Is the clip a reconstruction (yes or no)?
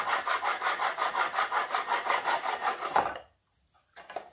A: no